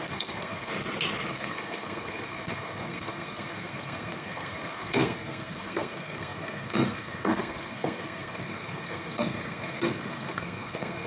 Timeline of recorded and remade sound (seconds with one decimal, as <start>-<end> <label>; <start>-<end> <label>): 0.0-0.7 remade; 0.7-1.3 recorded; 1.3-11.1 remade